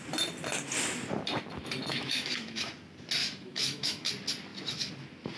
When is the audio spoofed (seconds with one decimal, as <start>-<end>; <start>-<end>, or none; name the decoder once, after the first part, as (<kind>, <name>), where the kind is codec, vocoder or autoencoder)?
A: 1.9-2.7 (autoencoder, DAC-VAE); 3.2-4.1